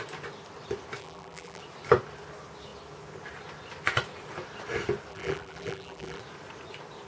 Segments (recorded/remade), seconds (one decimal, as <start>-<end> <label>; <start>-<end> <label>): 0.0-1.0 recorded; 1.0-1.6 remade; 1.6-5.1 recorded; 5.1-6.2 remade; 6.2-7.1 recorded